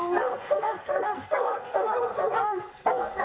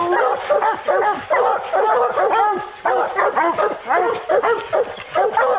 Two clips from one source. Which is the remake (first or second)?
first